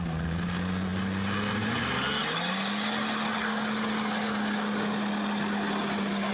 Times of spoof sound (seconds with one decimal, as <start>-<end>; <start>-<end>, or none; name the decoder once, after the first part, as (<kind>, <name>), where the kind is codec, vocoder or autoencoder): none